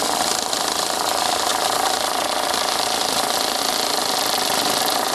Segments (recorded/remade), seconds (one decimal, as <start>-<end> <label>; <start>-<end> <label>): 0.0-5.1 recorded